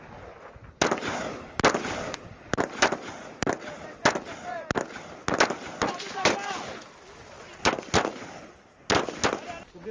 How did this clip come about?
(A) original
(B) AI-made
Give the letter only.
A